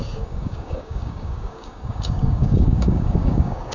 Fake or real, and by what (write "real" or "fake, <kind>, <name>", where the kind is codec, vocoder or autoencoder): fake, codec, DAC